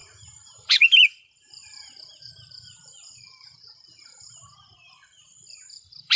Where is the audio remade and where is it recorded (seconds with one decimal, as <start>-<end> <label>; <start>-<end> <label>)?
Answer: 0.0-6.2 remade